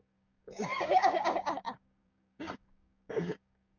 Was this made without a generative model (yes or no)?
no